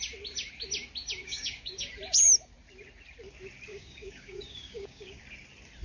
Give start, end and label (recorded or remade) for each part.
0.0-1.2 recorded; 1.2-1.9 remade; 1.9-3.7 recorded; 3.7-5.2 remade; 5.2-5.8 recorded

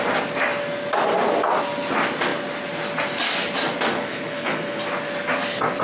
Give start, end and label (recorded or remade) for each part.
0.0-3.9 recorded; 3.9-4.8 remade; 4.8-5.8 recorded

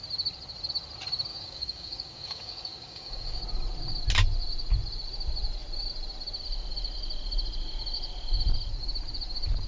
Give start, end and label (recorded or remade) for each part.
0.0-1.3 recorded; 1.3-3.4 remade; 3.4-9.7 recorded

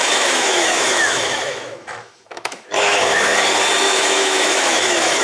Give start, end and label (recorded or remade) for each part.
0.0-3.3 remade; 3.3-3.8 recorded; 3.8-5.2 remade

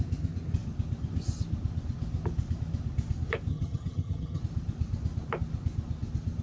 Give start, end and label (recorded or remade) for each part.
0.0-3.5 recorded; 3.5-4.4 remade; 4.4-6.4 recorded

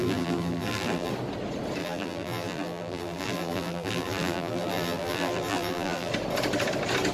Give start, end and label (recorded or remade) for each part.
0.0-1.1 remade; 1.1-1.8 recorded; 1.8-6.1 remade; 6.1-7.1 recorded